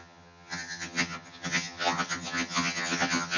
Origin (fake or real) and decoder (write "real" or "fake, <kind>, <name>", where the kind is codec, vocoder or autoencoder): fake, vocoder, HiFi-GAN